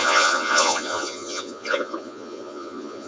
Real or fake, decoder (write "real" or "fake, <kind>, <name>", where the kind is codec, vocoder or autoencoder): fake, vocoder, Vocos